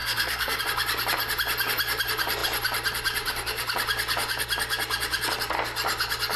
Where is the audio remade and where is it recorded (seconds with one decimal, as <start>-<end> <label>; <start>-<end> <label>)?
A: 0.0-0.6 remade; 0.6-6.4 recorded